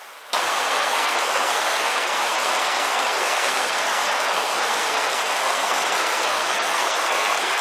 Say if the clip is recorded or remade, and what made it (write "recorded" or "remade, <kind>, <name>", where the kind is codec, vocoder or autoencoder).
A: remade, codec, SNAC